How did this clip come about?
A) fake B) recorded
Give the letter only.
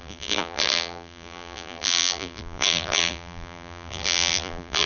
A